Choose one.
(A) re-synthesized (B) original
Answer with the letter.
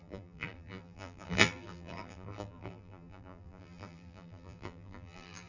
A